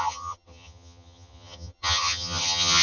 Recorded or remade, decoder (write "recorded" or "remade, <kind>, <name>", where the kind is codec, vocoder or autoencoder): remade, vocoder, HiFi-GAN